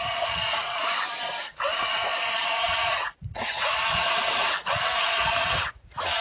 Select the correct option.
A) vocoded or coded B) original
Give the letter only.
A